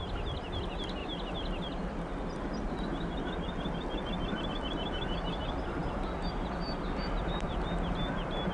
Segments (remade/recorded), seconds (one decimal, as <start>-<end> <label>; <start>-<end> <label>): 0.0-8.5 recorded